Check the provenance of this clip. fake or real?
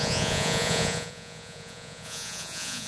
fake